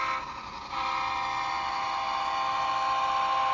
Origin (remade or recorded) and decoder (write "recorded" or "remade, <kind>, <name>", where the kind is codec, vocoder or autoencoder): recorded